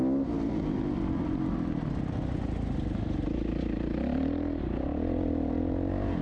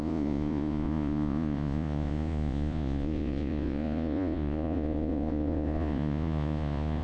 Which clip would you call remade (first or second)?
second